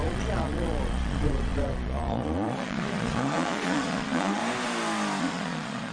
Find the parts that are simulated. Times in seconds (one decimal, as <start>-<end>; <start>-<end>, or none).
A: 0.0-4.4; 5.2-5.9